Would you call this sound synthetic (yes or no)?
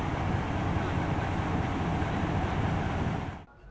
no